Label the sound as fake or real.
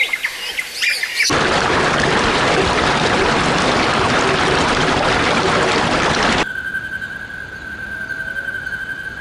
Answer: real